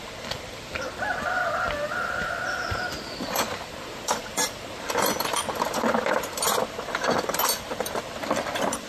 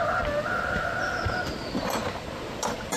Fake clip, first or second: first